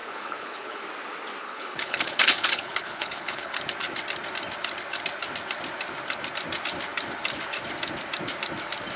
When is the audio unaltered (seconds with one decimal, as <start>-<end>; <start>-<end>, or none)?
0.8-1.4; 3.6-9.0